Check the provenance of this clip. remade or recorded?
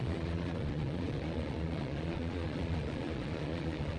remade